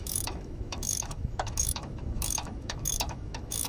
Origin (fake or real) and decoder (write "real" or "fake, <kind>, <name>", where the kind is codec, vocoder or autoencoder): fake, autoencoder, DAC-VAE